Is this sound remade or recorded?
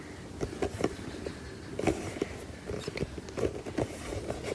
recorded